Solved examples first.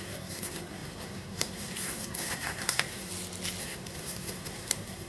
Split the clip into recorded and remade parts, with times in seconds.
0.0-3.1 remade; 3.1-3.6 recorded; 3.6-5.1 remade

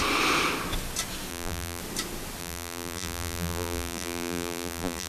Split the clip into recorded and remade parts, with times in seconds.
0.0-1.3 recorded; 1.3-1.8 remade; 1.8-2.4 recorded; 2.4-5.1 remade

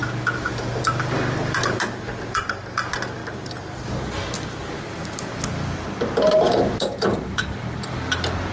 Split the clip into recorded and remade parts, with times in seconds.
0.0-8.5 recorded

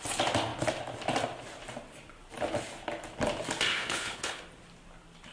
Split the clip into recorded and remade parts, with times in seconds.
0.0-3.7 recorded; 3.7-4.4 remade; 4.4-5.3 recorded

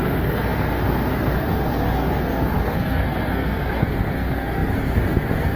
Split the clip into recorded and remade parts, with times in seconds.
0.0-5.6 remade